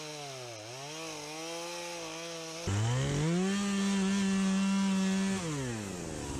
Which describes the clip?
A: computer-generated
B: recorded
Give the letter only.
B